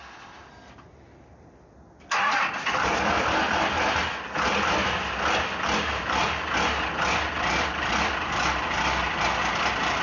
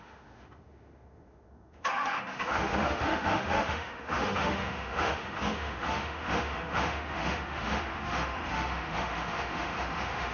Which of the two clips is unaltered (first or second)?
first